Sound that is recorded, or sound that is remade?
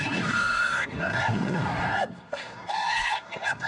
remade